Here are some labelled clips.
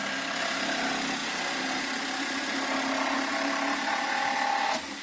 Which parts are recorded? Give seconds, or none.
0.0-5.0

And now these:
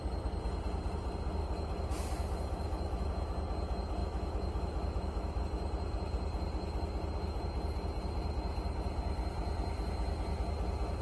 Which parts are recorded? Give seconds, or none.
0.0-1.4; 3.1-4.0; 5.4-11.0

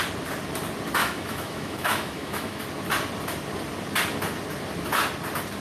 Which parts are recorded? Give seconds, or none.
0.0-1.0; 2.6-5.6